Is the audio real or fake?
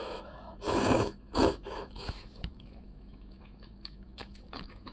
fake